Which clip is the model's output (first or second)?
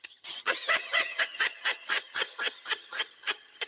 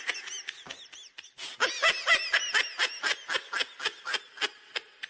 first